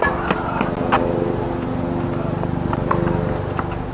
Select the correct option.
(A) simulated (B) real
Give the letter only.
B